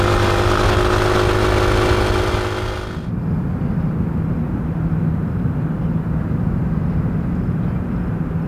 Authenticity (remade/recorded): recorded